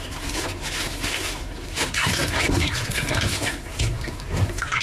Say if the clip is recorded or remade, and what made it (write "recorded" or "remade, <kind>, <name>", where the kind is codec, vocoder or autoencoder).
remade, codec, SNAC